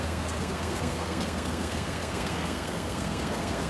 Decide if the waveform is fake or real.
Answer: fake